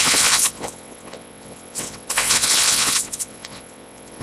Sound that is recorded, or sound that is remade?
remade